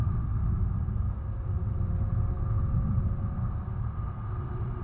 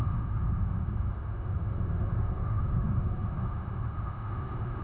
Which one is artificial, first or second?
second